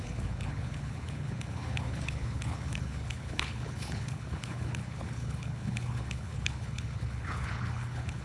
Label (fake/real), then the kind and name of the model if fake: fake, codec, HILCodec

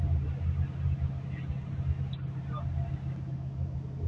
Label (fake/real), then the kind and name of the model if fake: real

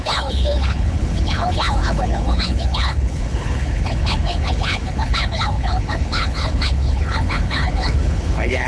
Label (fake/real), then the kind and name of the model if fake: fake, codec, HILCodec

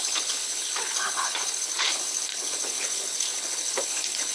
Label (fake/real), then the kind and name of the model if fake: fake, codec, HILCodec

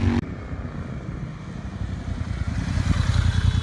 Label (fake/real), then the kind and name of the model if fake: real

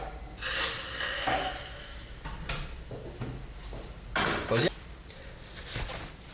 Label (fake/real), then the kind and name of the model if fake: real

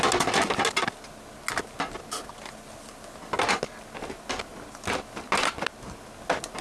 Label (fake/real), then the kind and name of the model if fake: real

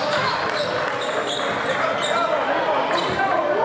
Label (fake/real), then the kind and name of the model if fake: real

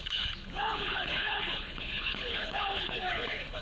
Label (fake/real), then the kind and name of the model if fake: fake, codec, HILCodec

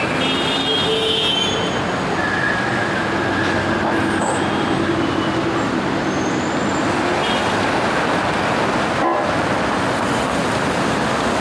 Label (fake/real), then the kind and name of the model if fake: real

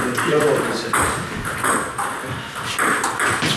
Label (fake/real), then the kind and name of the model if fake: real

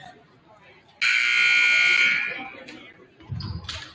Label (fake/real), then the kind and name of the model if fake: real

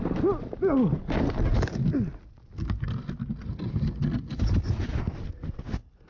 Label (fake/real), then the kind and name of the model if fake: real